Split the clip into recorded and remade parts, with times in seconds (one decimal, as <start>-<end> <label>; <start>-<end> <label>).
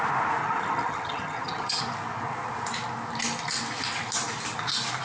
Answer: 0.0-0.4 recorded; 0.4-1.8 remade; 1.8-5.0 recorded